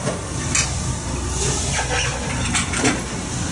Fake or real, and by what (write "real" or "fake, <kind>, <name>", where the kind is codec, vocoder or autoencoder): real